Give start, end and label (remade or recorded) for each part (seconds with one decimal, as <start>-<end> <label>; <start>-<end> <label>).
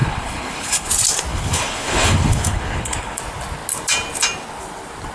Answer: 0.0-0.9 remade; 0.9-1.3 recorded; 1.3-3.2 remade; 3.2-5.1 recorded